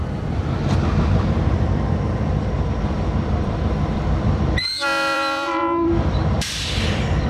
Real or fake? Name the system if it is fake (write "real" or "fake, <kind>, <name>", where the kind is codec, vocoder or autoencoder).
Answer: fake, vocoder, BigVGAN v2